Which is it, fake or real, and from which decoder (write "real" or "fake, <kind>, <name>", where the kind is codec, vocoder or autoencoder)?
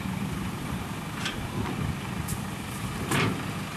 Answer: real